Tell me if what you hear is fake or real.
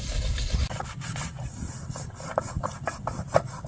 real